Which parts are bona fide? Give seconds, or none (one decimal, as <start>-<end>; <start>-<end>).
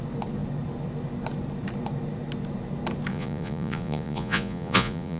0.0-3.1